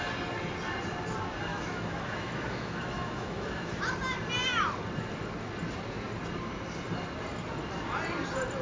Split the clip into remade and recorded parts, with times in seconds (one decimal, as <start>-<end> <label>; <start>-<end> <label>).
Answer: 0.0-1.5 recorded; 1.5-3.8 remade; 3.8-8.6 recorded